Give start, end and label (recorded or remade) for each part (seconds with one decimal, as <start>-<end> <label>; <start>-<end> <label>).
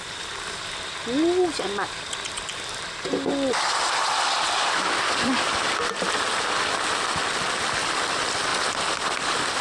0.0-9.6 recorded